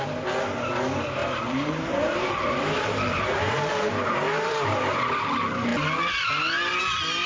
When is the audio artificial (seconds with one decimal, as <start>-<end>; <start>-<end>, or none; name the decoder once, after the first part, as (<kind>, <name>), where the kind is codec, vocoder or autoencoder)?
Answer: 1.2-5.0 (vocoder, BigVGAN v2)